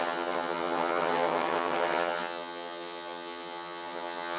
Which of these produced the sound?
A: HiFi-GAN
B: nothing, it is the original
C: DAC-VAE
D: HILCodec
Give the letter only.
A